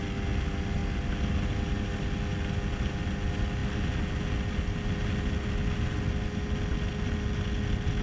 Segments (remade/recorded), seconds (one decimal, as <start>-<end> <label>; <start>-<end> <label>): 0.0-8.0 recorded